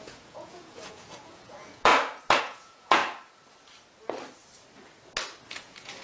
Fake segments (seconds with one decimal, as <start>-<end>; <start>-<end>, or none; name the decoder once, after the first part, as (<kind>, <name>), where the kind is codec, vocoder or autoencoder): 0.0-1.9 (vocoder, Vocos); 2.4-3.0; 5.5-6.0